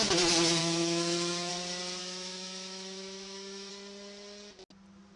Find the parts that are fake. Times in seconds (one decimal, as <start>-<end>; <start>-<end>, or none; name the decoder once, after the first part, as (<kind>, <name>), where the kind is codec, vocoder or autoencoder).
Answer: 0.6-1.5 (autoencoder, DAC-VAE); 2.0-3.7